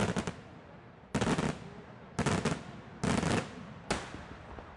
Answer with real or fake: real